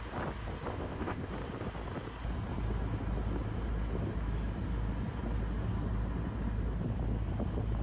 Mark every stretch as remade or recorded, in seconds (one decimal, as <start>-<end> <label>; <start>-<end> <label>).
0.0-0.7 recorded; 0.7-1.3 remade; 1.3-7.8 recorded